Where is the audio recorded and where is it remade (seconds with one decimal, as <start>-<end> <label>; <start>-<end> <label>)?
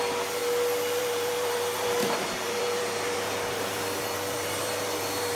0.0-0.4 remade; 0.4-1.0 recorded; 1.0-5.4 remade